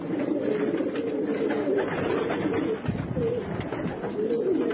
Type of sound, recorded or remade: recorded